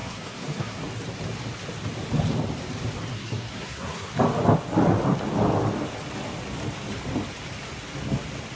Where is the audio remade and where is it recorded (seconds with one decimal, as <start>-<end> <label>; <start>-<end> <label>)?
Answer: 0.0-0.8 remade; 0.8-3.1 recorded; 3.1-4.1 remade; 4.1-8.6 recorded